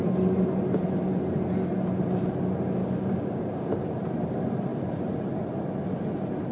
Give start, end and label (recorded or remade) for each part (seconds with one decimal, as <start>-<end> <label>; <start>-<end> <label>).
0.0-2.8 recorded; 2.8-3.7 remade; 3.7-6.5 recorded